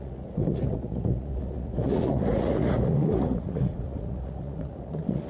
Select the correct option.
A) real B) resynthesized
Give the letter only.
B